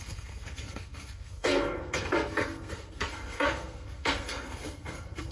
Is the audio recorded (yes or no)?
no